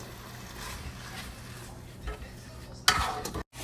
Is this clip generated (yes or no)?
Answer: no